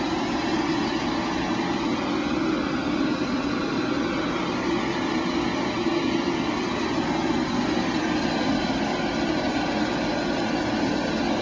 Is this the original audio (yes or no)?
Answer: yes